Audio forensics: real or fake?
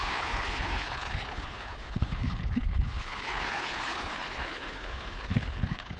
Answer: fake